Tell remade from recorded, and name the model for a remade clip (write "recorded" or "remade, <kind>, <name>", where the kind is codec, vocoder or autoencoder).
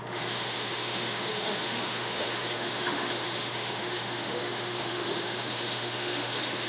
remade, autoencoder, DAC-VAE